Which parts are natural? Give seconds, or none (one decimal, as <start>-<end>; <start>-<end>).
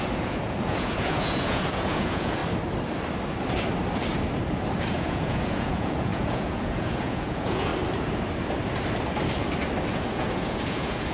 2.4-4.9; 7.7-9.9